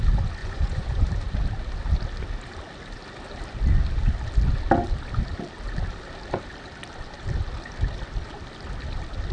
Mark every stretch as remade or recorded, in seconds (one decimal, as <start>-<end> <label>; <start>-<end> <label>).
0.0-0.4 recorded; 0.4-1.0 remade; 1.0-9.3 recorded